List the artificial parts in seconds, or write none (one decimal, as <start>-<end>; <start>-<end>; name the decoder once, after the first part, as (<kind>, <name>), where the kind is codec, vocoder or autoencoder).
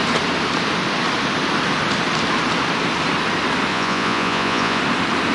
3.7-4.8 (vocoder, Vocos)